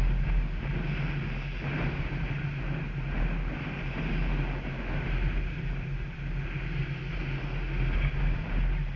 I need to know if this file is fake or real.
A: real